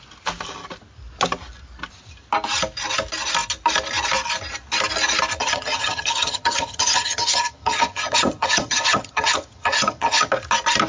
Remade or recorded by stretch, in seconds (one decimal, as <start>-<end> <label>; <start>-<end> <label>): 0.0-5.4 recorded; 5.4-10.3 remade; 10.3-10.9 recorded

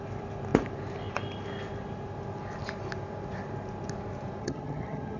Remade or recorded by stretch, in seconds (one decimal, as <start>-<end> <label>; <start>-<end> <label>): 0.0-4.4 recorded; 4.4-5.2 remade